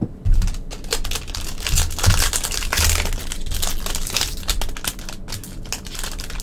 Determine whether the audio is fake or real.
real